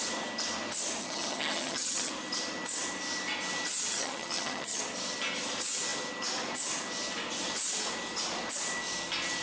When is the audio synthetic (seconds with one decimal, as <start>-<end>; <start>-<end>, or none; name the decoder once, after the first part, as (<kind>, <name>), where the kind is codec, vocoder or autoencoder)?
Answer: 1.0-2.1 (vocoder, HiFi-GAN); 3.9-4.8